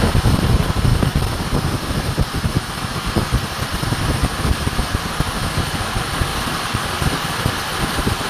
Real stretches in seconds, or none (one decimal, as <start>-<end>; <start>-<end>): 0.0-0.9; 2.0-4.2; 4.8-6.3

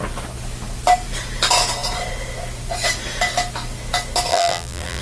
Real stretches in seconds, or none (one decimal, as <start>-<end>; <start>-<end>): 0.0-4.3

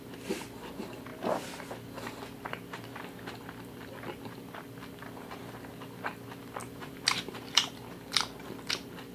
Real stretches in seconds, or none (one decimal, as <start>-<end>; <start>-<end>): 0.0-6.6; 7.7-9.1

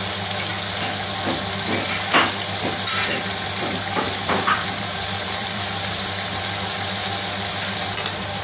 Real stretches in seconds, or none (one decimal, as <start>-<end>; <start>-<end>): 0.0-3.1; 6.4-8.4

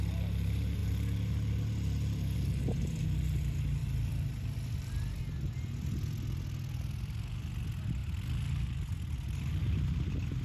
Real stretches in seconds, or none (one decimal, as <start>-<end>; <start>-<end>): 0.0-3.8; 5.2-10.4